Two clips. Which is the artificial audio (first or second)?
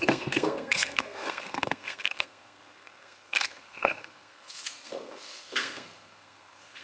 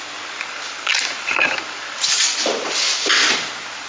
first